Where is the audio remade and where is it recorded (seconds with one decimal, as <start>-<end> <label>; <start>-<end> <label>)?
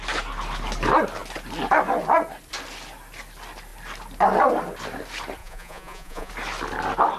0.0-5.4 recorded; 5.4-6.3 remade; 6.3-7.2 recorded